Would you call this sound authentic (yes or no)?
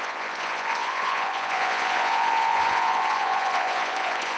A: no